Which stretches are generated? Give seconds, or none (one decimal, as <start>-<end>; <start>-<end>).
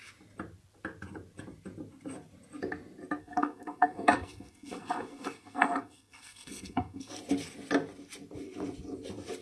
3.2-7.1